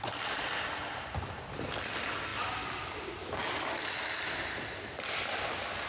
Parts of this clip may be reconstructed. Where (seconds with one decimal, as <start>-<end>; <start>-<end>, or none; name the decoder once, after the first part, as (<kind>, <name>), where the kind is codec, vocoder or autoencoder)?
none